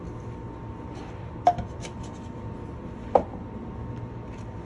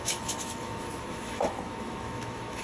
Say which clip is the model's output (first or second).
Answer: second